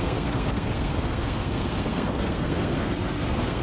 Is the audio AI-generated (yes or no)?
yes